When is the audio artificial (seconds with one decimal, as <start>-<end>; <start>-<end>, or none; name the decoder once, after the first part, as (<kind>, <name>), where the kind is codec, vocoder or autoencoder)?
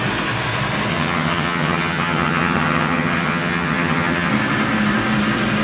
0.9-4.3 (vocoder, HiFi-GAN)